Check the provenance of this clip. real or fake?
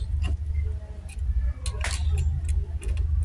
real